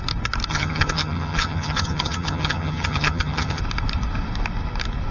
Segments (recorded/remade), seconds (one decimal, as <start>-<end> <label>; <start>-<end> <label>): 0.0-0.5 recorded; 0.5-3.6 remade; 3.6-5.1 recorded